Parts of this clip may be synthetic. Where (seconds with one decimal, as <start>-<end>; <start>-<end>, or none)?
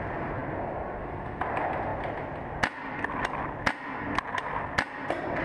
none